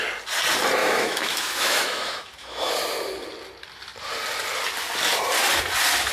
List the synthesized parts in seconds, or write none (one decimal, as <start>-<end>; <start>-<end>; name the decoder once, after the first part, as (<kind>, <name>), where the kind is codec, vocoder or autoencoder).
0.8-2.7 (autoencoder, DAC-VAE)